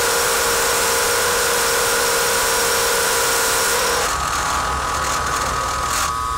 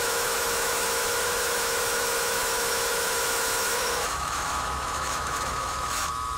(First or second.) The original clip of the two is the first